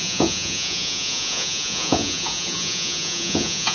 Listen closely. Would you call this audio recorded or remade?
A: remade